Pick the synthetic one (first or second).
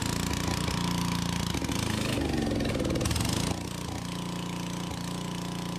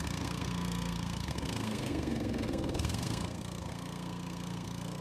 second